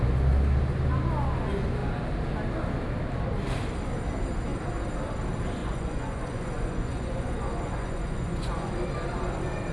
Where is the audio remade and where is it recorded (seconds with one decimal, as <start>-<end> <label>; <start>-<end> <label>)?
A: 0.0-5.6 recorded; 5.6-8.7 remade; 8.7-9.7 recorded